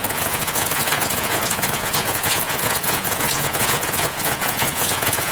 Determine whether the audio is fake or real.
fake